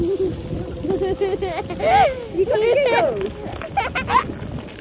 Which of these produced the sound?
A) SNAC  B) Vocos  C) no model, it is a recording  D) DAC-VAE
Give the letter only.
C